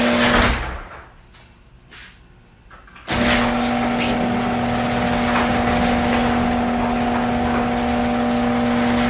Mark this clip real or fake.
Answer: real